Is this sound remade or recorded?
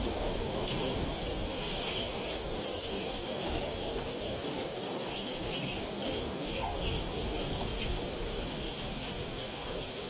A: remade